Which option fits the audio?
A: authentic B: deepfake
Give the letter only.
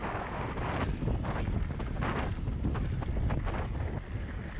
A